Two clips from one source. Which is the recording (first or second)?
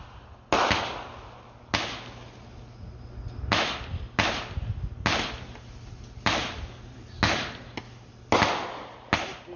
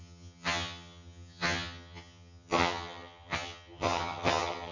first